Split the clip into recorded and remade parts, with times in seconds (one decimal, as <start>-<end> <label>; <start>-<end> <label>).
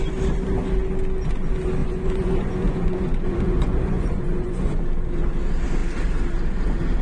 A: 0.0-1.8 recorded; 1.8-4.8 remade; 4.8-7.0 recorded